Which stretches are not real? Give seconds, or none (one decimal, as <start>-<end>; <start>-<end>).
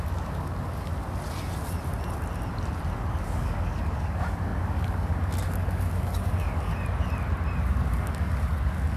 0.0-0.9; 3.2-6.7; 7.7-9.0